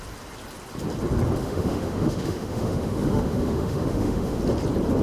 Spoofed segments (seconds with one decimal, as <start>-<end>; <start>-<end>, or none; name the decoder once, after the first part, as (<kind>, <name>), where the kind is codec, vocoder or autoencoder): 1.4-4.4 (autoencoder, DAC-VAE)